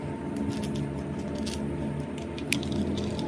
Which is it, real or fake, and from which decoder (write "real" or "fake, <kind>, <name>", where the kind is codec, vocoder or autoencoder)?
real